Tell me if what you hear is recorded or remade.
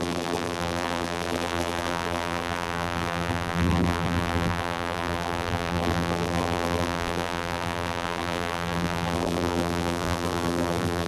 remade